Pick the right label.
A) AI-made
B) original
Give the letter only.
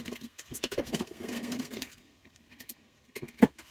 A